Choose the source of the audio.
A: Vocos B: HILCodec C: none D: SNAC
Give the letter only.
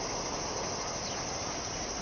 C